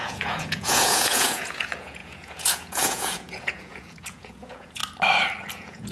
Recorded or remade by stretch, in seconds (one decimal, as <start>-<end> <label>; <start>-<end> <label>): 0.0-4.8 remade; 4.8-5.5 recorded; 5.5-5.9 remade